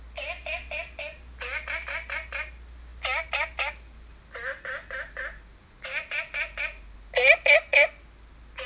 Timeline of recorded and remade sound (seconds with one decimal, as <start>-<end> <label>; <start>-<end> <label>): 0.0-8.7 recorded